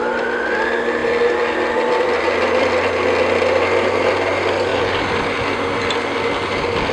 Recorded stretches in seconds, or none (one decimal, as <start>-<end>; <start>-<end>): 0.0-6.9